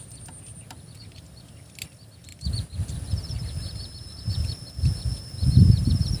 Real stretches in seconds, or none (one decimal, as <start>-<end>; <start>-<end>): 0.0-2.3

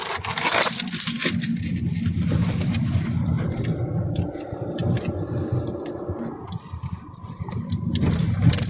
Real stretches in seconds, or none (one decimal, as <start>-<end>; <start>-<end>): 0.0-8.7